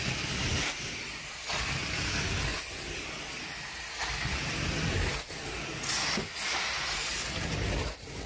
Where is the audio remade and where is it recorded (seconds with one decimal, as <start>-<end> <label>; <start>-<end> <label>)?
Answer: 0.0-8.3 recorded